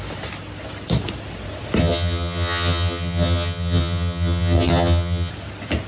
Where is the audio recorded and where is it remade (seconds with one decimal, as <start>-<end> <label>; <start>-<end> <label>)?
0.0-1.8 recorded; 1.8-5.3 remade; 5.3-5.9 recorded